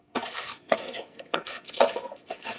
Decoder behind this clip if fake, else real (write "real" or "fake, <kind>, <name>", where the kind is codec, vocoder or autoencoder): fake, codec, SNAC